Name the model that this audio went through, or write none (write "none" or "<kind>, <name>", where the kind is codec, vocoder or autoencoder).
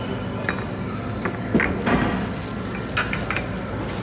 none